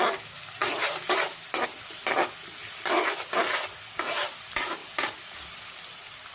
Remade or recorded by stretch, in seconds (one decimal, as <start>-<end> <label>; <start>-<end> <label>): 0.0-6.3 recorded